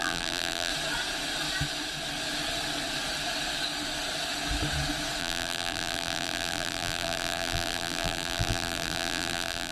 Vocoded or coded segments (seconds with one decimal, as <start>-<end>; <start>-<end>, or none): 0.0-0.7; 5.2-9.7